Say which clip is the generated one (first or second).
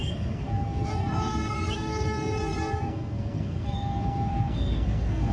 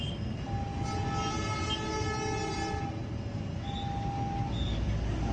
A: first